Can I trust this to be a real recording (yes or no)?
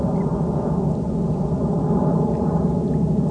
yes